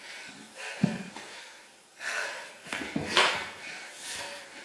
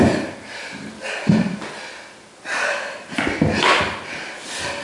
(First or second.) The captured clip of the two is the second